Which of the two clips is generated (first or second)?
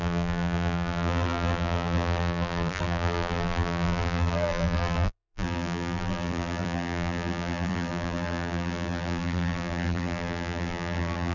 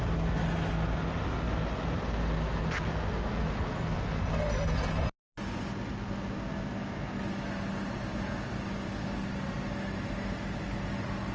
first